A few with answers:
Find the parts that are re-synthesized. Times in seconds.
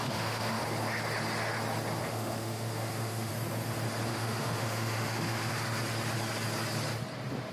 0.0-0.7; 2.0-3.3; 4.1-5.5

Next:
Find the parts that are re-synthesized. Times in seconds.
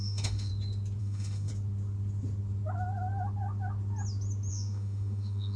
0.0-0.5; 1.0-1.5; 4.5-5.6